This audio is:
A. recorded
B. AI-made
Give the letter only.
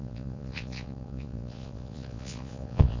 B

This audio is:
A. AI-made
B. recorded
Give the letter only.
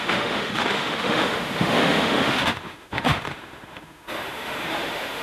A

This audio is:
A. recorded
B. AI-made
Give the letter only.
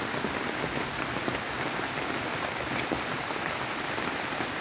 A